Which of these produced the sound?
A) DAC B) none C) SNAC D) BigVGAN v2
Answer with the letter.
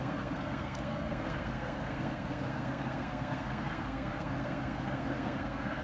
C